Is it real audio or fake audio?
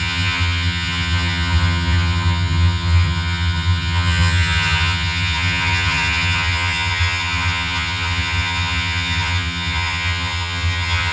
fake